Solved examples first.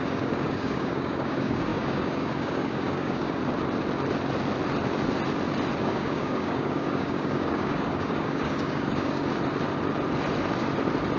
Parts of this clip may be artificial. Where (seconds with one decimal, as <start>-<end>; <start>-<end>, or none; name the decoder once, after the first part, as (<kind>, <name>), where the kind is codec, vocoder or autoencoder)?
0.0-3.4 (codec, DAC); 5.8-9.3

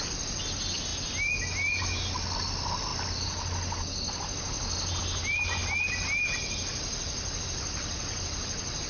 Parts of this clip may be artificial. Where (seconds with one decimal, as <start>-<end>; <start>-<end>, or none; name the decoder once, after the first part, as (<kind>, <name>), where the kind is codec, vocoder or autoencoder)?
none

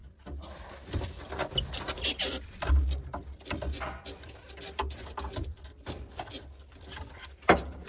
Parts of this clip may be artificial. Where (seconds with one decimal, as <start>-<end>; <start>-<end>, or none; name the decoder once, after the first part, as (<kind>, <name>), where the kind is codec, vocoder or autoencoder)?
1.2-7.9 (vocoder, BigVGAN v2)

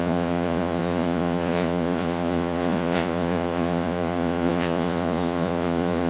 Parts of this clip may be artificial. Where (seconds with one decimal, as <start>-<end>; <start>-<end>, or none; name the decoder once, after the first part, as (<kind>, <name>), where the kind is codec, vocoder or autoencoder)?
0.0-6.1 (vocoder, Vocos)

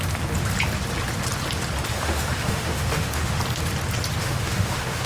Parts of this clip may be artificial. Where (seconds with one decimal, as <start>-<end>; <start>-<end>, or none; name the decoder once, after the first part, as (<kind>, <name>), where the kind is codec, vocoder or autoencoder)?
1.9-3.4 (autoencoder, DAC-VAE); 4.2-5.1

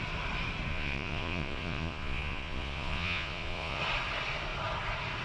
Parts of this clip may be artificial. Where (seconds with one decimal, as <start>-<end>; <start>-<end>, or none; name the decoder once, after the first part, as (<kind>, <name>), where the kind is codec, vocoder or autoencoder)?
0.7-3.8 (vocoder, Vocos)

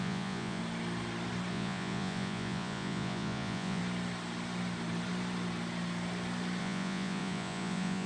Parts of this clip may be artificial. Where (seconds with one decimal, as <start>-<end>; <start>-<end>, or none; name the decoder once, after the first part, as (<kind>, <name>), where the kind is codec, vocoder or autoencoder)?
0.0-0.6 (vocoder, Vocos); 1.5-3.8; 6.6-8.1

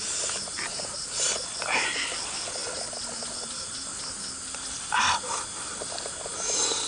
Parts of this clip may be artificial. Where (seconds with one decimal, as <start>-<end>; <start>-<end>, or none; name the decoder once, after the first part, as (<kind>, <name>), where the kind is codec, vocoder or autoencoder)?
none